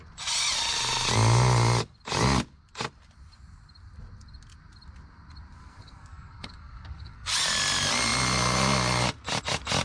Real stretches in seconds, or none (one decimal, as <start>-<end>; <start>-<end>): 0.0-5.6; 7.3-9.8